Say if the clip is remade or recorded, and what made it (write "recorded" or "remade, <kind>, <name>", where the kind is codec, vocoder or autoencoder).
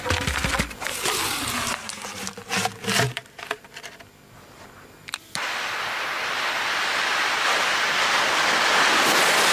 recorded